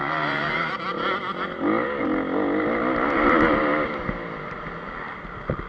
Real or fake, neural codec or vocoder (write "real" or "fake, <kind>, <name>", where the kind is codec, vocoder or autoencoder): real